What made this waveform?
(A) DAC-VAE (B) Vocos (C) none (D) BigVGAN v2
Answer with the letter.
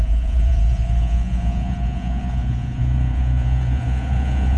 B